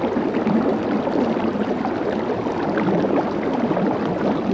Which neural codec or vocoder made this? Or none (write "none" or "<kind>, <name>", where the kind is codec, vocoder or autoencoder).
none